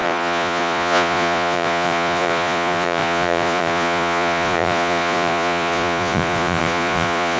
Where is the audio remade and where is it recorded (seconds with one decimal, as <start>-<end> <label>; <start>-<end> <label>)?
0.0-7.4 remade